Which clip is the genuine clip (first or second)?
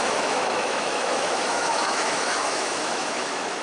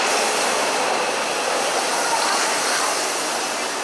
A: second